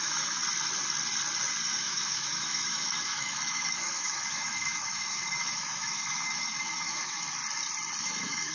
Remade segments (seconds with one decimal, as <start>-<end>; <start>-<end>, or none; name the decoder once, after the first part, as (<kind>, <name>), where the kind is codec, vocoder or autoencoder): 0.0-0.4 (autoencoder, DAC-VAE); 1.7-7.4; 8.0-8.5